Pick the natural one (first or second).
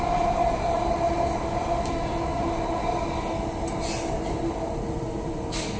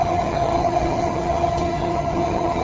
first